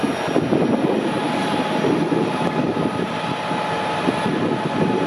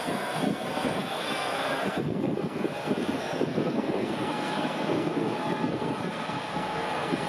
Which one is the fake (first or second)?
second